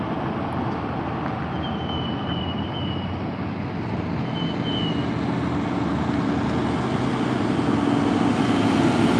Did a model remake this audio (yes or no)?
no